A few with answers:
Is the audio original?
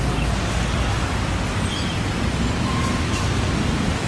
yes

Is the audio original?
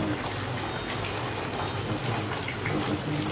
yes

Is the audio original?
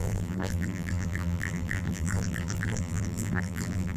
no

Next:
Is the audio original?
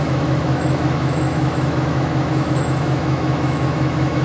no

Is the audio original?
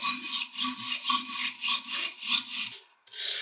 yes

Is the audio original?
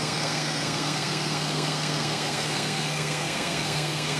no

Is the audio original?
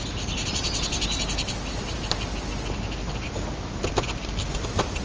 yes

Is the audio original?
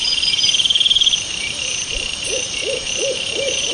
no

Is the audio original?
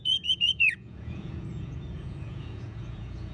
no